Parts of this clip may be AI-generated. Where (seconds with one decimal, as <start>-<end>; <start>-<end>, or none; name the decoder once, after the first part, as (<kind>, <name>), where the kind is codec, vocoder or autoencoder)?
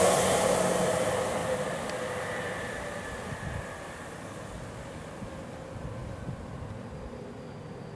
1.4-2.8 (vocoder, BigVGAN v2); 6.0-7.5